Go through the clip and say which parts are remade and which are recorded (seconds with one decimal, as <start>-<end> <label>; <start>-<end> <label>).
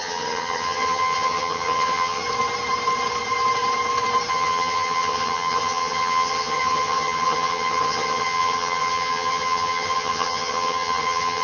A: 0.0-2.2 remade; 2.2-4.3 recorded; 4.3-11.4 remade